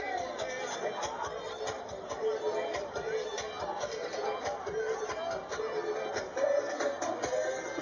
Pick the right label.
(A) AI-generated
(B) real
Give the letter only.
B